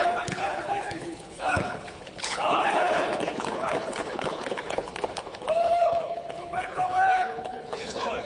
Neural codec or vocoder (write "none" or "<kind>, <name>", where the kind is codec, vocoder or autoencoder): codec, HILCodec